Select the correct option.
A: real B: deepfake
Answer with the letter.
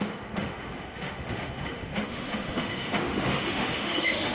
B